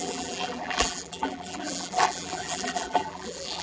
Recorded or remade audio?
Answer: remade